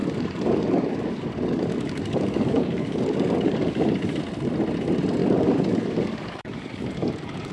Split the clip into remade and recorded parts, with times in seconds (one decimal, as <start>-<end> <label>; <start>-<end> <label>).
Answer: 0.0-4.2 remade; 4.2-5.2 recorded; 5.2-7.5 remade